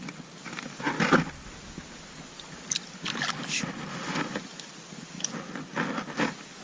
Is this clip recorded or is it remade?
recorded